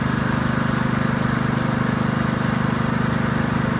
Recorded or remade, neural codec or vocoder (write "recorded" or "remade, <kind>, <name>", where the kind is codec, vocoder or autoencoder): recorded